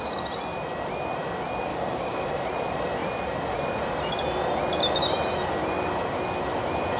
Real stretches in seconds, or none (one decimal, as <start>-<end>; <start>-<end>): 0.0-1.7; 2.3-7.0